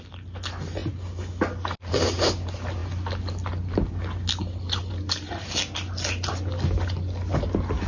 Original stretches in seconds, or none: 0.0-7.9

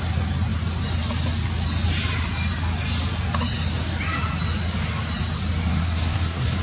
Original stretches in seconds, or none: 0.0-5.7

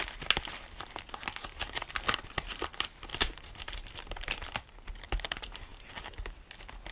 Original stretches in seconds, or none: 0.0-3.1; 4.9-6.9

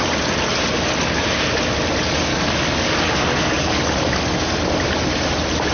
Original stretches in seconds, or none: 0.0-2.3; 4.2-5.7